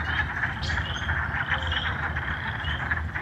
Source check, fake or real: real